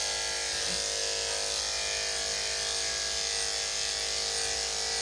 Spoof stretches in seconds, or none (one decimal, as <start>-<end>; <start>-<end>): none